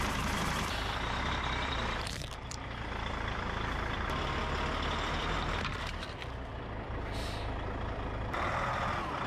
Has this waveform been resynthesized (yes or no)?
yes